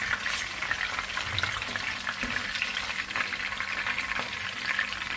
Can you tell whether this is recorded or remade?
remade